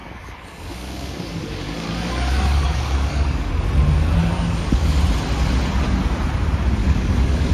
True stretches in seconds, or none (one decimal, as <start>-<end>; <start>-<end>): 3.5-4.2; 5.0-6.8